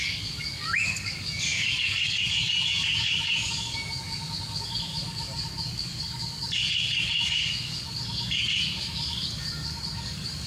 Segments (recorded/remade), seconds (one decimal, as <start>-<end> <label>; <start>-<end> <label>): 0.0-10.5 remade